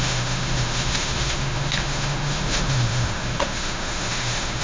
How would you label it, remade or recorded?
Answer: remade